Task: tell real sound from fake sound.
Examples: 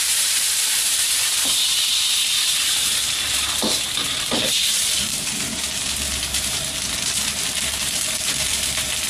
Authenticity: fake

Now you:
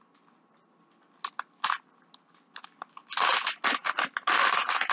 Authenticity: real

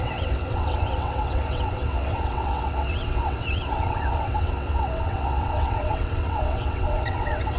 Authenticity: fake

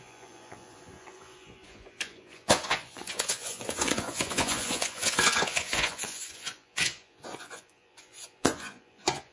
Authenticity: fake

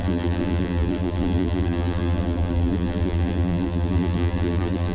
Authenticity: fake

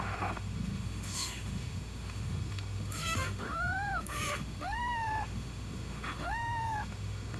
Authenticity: fake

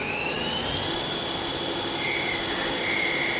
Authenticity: real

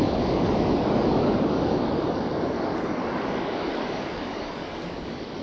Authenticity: fake